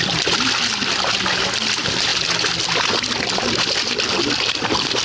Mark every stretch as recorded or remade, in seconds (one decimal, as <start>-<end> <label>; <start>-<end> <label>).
0.0-5.0 recorded